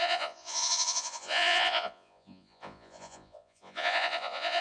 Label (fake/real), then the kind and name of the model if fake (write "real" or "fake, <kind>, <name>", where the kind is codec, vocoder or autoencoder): fake, vocoder, Vocos